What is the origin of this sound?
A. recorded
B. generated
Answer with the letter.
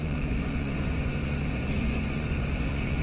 B